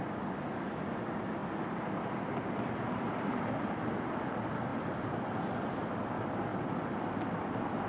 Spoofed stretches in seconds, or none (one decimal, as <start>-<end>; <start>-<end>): 1.4-3.7; 4.7-5.6; 6.5-7.5